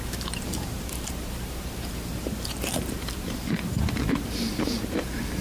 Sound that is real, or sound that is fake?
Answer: fake